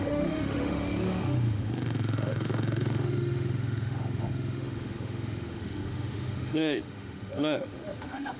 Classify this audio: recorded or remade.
remade